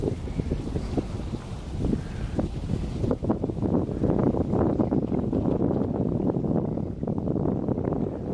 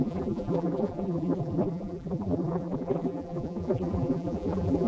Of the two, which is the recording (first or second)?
first